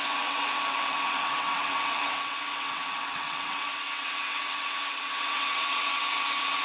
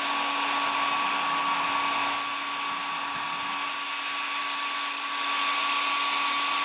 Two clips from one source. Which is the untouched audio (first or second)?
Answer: second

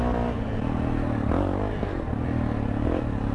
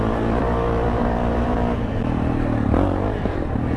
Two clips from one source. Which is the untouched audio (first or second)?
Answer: first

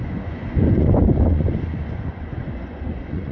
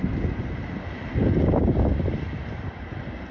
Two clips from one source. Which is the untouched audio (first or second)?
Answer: second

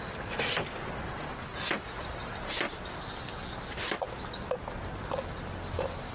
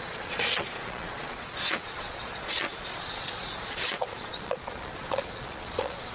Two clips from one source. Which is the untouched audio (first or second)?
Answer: first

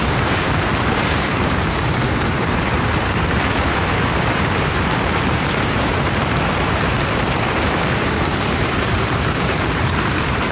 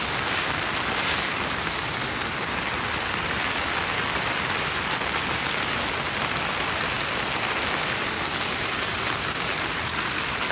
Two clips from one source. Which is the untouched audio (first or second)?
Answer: second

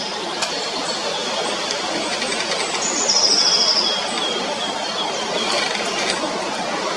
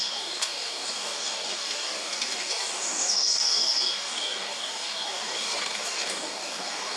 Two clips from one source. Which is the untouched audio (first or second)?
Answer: first